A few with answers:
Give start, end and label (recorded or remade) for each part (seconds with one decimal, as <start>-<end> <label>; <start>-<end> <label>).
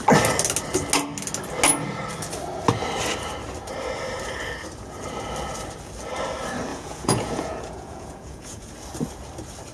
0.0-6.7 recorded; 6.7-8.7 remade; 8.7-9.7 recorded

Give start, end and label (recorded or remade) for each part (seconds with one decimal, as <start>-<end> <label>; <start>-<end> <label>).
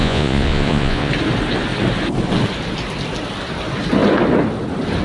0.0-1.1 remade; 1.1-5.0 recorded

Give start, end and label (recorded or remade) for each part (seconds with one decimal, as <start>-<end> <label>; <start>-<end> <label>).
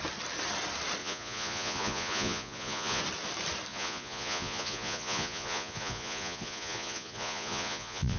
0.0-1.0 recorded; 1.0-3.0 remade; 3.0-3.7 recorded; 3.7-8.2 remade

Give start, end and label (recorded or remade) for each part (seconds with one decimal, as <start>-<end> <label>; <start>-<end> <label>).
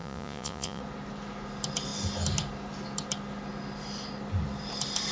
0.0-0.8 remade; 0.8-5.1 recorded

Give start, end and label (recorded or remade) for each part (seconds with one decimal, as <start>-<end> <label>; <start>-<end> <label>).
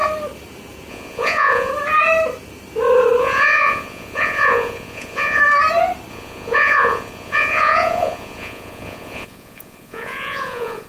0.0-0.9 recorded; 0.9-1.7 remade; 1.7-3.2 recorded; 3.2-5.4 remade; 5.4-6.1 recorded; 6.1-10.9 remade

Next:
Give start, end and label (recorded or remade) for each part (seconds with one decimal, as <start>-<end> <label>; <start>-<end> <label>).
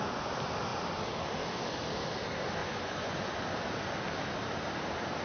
0.0-2.6 recorded; 2.6-3.4 remade; 3.4-5.2 recorded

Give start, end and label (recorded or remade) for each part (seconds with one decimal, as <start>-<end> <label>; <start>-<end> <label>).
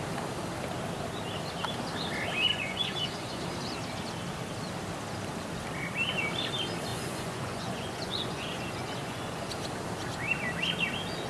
0.0-2.5 recorded; 2.5-3.4 remade; 3.4-6.9 recorded; 6.9-9.5 remade; 9.5-11.3 recorded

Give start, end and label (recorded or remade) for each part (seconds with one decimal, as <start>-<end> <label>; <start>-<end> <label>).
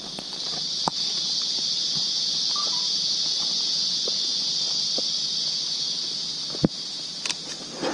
0.0-2.6 recorded; 2.6-4.5 remade; 4.5-7.9 recorded